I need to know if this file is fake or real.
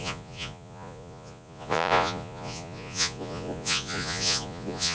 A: fake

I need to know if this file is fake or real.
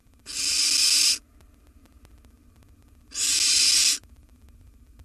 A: real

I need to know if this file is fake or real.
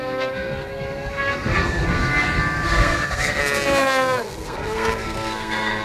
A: fake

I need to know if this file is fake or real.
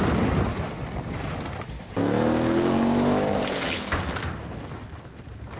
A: real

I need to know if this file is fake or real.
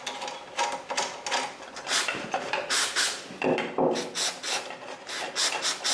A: real